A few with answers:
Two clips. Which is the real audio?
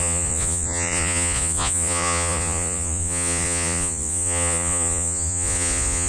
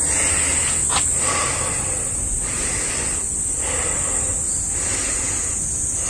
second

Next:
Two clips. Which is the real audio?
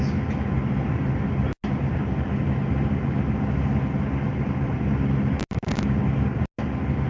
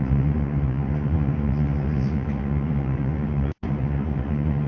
first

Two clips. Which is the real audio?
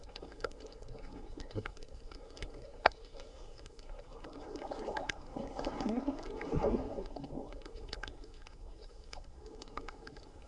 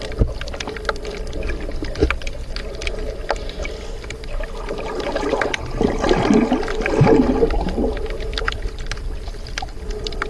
second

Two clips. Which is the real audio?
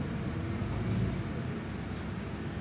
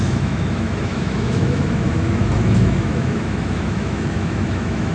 first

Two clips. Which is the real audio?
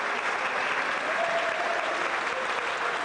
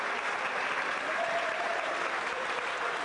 first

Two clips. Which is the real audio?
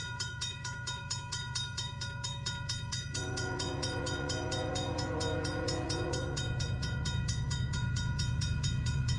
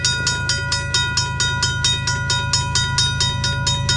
second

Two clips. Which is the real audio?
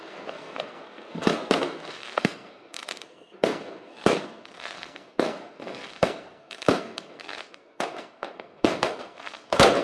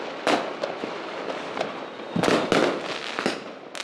second